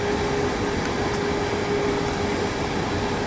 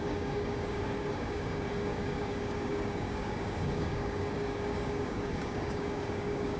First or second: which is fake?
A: second